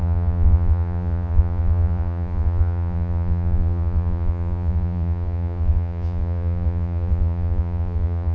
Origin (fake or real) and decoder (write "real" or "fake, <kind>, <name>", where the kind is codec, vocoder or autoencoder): fake, vocoder, Vocos